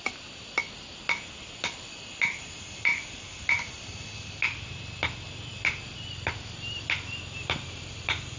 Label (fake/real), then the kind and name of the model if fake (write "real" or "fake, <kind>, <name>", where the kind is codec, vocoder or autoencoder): real